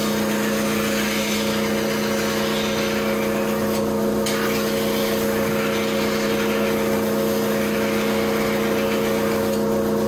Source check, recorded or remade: recorded